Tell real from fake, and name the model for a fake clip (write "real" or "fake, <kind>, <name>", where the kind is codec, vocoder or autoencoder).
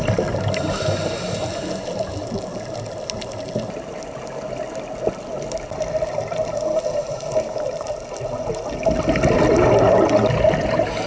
real